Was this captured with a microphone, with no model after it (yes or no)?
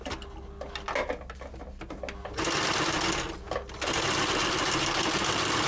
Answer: yes